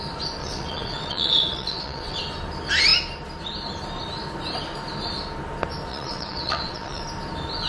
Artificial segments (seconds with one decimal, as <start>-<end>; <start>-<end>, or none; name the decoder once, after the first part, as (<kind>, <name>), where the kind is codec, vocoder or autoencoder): 0.4-2.2 (vocoder, WaveNeXt); 5.9-7.0